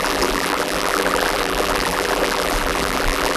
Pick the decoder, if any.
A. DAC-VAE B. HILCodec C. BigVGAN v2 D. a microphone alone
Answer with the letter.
C